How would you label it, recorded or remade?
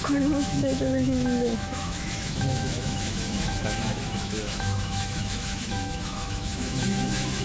remade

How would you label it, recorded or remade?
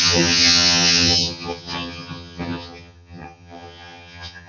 remade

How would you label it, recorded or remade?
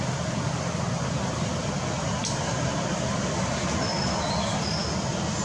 recorded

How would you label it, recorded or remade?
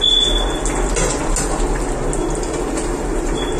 recorded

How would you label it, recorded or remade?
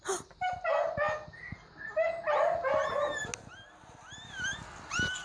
recorded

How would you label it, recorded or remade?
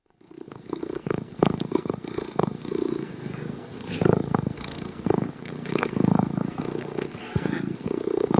remade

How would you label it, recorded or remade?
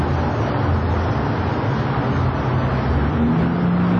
recorded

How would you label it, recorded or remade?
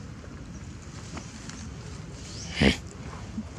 recorded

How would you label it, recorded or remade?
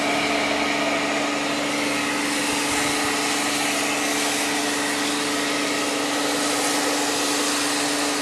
recorded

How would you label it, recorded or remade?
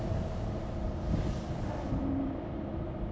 remade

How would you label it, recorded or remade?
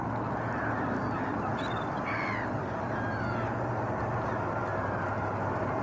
recorded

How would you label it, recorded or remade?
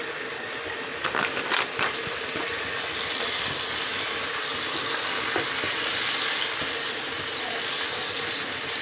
recorded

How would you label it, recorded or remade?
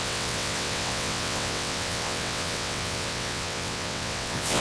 remade